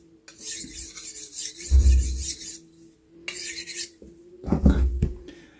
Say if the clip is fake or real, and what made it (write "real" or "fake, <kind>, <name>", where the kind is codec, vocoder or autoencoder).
real